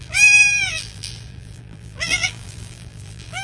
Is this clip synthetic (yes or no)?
yes